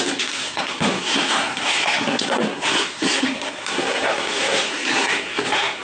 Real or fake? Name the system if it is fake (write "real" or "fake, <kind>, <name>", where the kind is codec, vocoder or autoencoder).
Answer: fake, codec, SNAC